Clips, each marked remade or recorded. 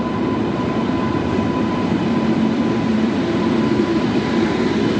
remade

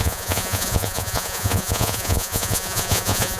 remade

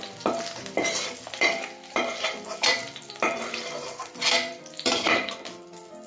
remade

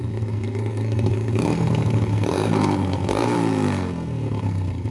remade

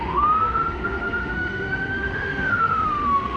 remade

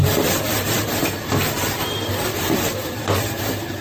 remade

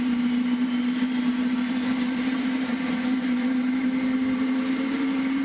remade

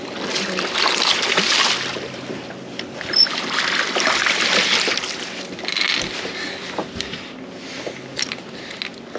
recorded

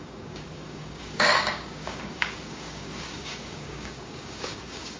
remade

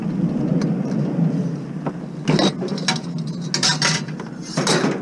recorded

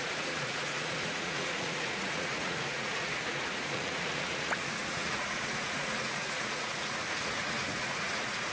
remade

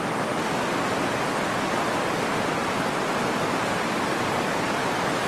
recorded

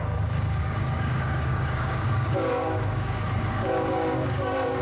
remade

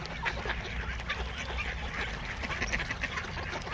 recorded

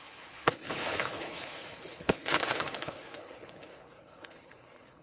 remade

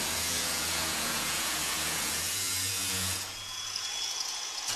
remade